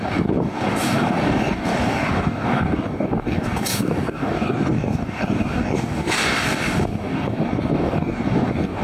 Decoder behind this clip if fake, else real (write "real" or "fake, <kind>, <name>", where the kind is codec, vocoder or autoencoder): fake, codec, DAC